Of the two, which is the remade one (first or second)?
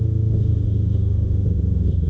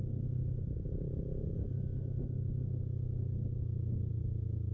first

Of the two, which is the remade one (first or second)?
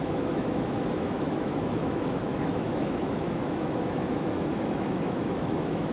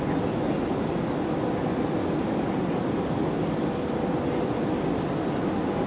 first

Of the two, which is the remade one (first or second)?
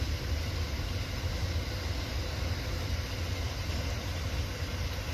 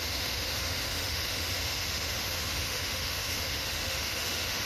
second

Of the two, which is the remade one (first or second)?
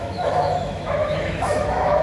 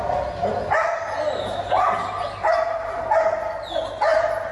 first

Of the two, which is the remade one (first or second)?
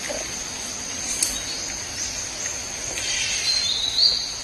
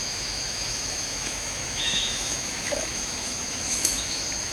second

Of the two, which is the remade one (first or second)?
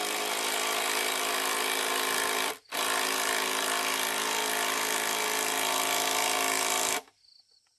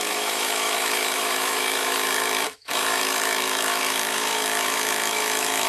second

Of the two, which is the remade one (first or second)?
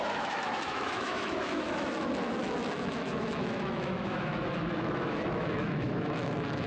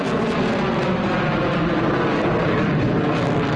first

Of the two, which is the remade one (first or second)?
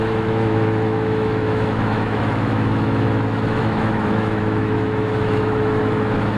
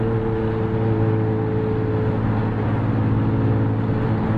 first